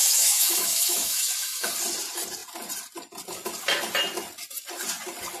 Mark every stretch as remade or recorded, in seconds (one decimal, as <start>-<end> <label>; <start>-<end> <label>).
0.0-1.7 remade; 1.7-5.4 recorded